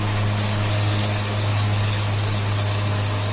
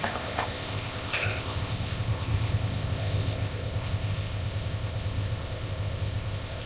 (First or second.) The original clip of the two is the first